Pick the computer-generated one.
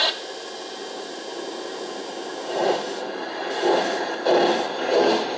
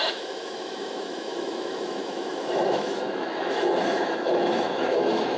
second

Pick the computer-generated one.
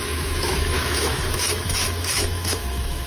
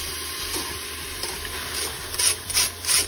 first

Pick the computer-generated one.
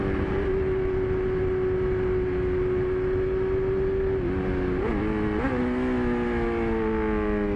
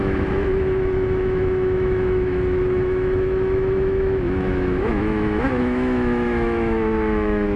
second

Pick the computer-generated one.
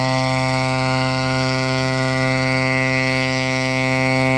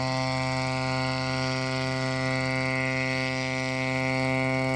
first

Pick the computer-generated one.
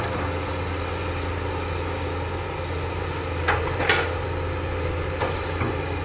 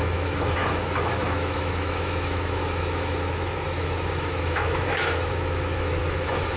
second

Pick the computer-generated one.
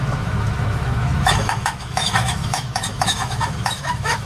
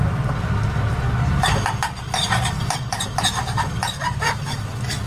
first